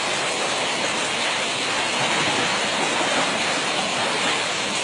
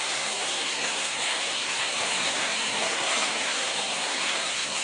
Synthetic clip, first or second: second